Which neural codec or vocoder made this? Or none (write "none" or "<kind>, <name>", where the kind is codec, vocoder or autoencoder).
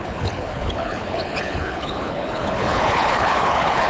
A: codec, HILCodec